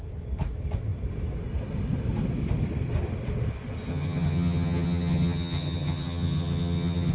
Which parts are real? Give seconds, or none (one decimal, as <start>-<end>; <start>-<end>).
0.0-3.9